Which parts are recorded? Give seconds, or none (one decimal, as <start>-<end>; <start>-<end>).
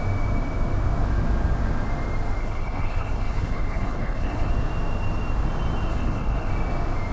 0.0-2.4; 4.5-5.9; 6.5-7.1